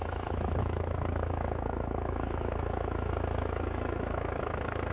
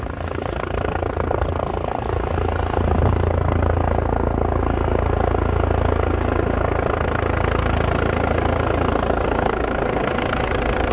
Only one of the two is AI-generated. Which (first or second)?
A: first